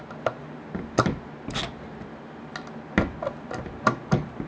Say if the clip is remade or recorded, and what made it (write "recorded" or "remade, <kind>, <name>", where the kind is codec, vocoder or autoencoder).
recorded